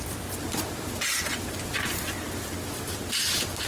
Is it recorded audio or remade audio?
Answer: recorded